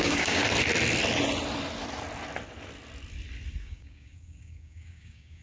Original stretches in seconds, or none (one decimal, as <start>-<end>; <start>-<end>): 0.4-3.6